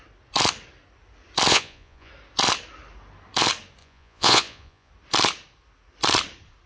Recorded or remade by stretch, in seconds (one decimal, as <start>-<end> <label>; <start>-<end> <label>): 0.0-1.5 recorded; 1.5-2.1 remade; 2.1-3.8 recorded; 3.8-4.9 remade; 4.9-6.7 recorded